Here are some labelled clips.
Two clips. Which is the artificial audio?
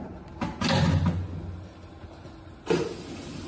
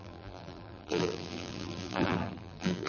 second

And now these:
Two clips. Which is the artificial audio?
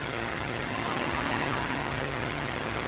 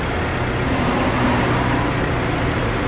first